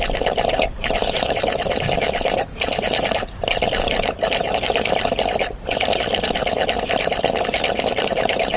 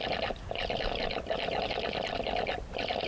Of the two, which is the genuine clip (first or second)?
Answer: second